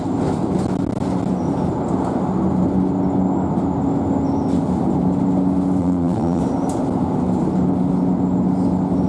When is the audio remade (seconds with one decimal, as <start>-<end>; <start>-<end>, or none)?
5.8-6.4